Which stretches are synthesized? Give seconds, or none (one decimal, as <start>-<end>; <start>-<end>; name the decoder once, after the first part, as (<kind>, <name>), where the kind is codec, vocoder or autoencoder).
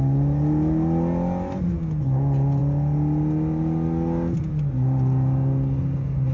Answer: none